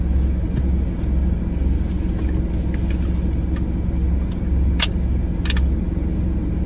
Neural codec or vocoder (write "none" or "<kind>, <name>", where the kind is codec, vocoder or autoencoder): none